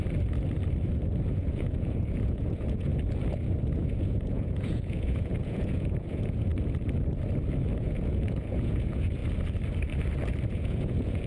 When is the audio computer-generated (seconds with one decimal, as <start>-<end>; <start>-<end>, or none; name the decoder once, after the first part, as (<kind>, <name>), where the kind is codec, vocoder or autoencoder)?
1.3-2.9 (vocoder, Vocos); 3.8-6.5; 7.8-9.2; 10.5-11.3